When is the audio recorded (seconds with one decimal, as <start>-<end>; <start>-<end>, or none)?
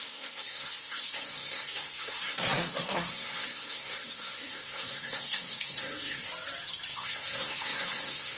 6.3-6.9